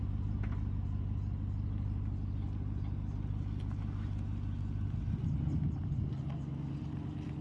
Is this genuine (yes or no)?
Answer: yes